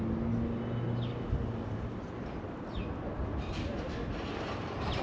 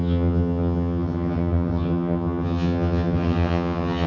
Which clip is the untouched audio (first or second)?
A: first